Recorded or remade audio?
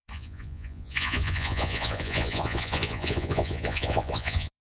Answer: remade